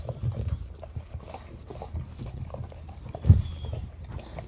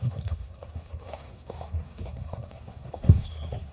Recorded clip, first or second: first